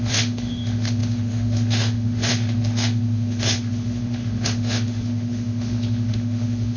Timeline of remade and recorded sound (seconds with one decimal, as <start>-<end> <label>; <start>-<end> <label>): 0.0-6.8 remade